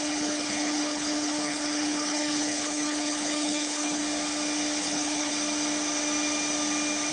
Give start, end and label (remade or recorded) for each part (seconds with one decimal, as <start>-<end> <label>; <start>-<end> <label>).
0.0-4.0 remade; 4.0-4.8 recorded; 4.8-5.3 remade; 5.3-7.1 recorded